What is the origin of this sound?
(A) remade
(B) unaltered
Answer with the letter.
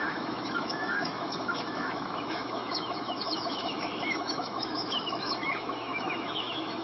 A